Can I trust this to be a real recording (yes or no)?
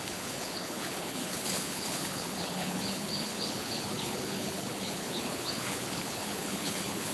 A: no